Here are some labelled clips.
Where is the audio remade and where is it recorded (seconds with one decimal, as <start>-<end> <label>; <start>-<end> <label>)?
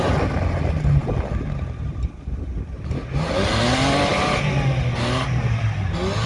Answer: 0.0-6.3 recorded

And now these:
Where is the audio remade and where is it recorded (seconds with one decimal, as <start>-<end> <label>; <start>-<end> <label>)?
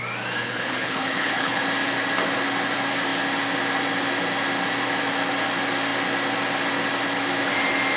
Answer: 0.0-0.4 recorded; 0.4-1.6 remade; 1.6-8.0 recorded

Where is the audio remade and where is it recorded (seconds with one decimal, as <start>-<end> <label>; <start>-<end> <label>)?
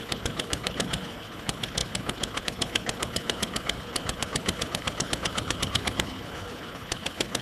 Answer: 0.0-7.4 remade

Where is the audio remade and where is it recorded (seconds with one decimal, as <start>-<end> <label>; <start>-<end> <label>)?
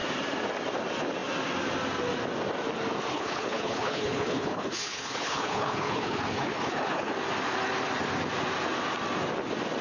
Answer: 0.0-3.1 recorded; 3.1-7.1 remade; 7.1-9.8 recorded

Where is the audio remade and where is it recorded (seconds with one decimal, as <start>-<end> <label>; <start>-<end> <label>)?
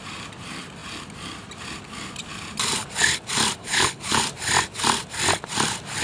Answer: 0.0-3.6 recorded; 3.6-4.2 remade; 4.2-6.0 recorded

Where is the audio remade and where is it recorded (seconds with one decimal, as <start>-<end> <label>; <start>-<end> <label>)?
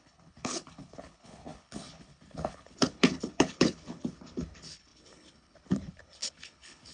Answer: 0.0-6.9 remade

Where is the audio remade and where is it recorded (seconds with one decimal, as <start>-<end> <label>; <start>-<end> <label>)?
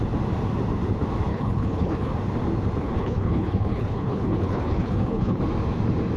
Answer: 0.0-1.3 recorded; 1.3-2.1 remade; 2.1-2.8 recorded; 2.8-5.4 remade; 5.4-6.2 recorded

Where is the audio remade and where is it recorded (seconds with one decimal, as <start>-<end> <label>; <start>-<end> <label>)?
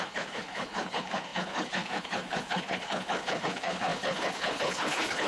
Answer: 0.0-5.3 remade